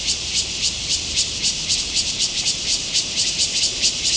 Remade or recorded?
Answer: remade